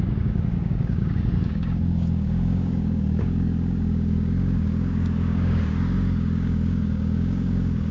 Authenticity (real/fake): fake